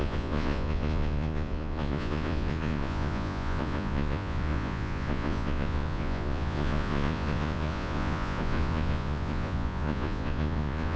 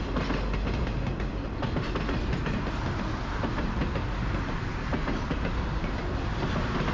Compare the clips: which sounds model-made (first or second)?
first